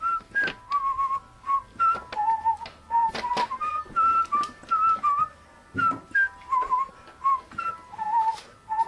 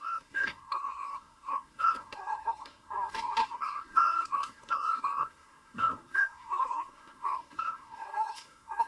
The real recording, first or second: first